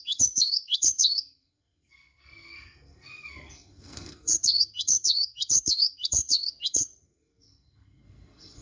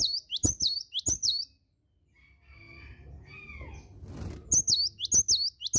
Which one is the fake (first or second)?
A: first